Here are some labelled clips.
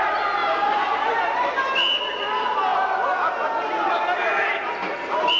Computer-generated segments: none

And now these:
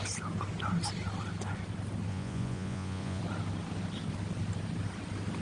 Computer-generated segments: 2.1-3.2 (vocoder, Vocos)

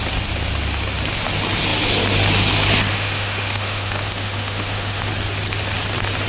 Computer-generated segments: 2.9-5.1 (autoencoder, DAC-VAE)

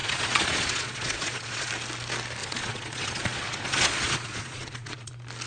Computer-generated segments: 0.0-1.7 (vocoder, Vocos); 2.4-5.1

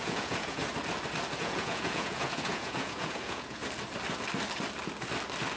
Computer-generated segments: 0.0-0.6 (vocoder, Vocos); 1.4-3.6